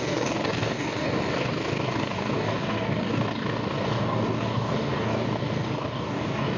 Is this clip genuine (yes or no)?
no